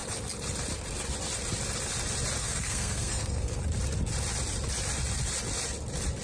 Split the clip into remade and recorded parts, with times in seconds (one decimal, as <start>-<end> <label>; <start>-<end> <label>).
0.0-2.4 recorded; 2.4-3.6 remade; 3.6-6.2 recorded